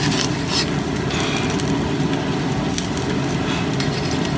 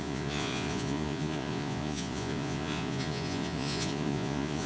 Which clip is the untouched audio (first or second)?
first